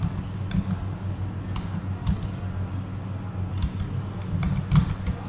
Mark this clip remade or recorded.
recorded